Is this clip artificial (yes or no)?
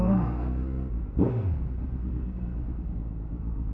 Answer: yes